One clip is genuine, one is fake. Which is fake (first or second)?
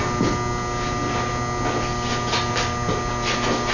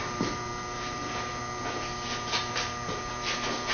second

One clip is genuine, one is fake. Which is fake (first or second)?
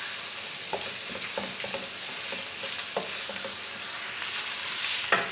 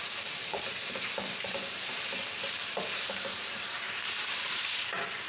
second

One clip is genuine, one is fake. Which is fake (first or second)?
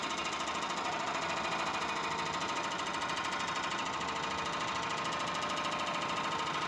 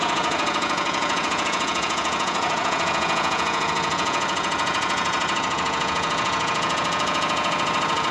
second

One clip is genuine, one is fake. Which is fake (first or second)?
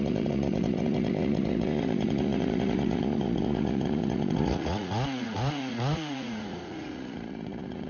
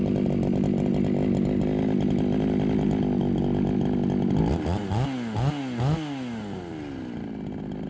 first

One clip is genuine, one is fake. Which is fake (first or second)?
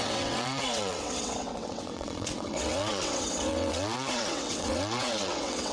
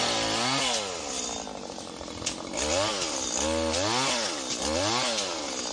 first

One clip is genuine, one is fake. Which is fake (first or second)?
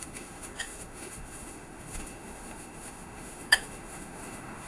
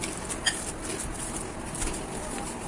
first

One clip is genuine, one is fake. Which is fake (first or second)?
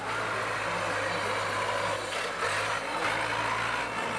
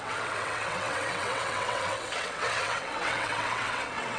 second